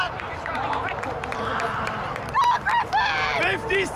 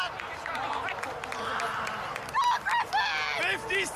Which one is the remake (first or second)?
first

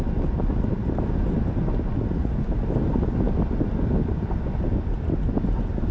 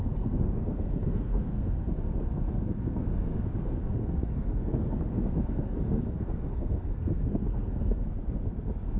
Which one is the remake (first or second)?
second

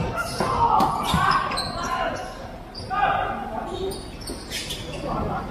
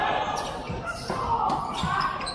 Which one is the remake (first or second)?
second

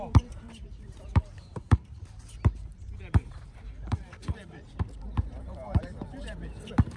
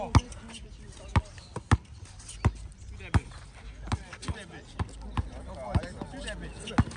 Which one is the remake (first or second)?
first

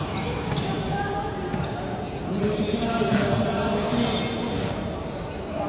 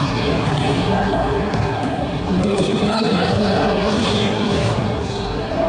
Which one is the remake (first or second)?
second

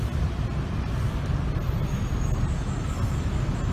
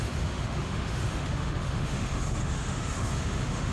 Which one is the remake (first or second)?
second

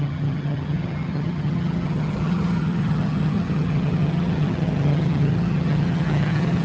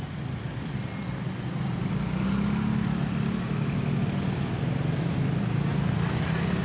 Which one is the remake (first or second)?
first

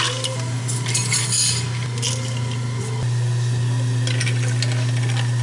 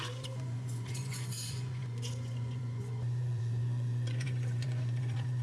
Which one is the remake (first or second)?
second